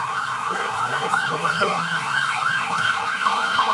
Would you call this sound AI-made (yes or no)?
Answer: yes